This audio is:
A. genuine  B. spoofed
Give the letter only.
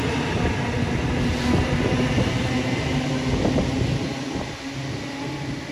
A